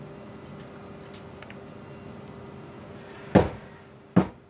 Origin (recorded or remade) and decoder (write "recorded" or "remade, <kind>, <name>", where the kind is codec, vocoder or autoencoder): recorded